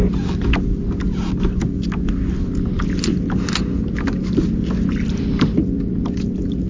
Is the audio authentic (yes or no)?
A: yes